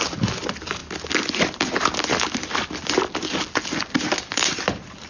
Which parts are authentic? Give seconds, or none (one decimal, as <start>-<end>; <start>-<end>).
0.0-5.1

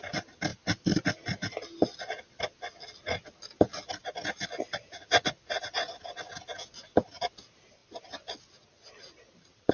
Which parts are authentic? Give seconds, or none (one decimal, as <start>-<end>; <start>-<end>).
0.0-9.7

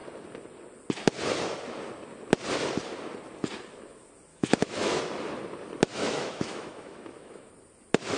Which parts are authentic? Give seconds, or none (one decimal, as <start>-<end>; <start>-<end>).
0.0-4.3; 5.0-5.9; 7.5-8.2

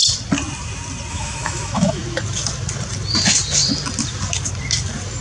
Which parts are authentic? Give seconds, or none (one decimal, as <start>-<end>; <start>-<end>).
0.0-1.1; 2.0-5.2